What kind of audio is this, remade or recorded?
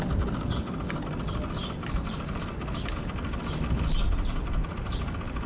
recorded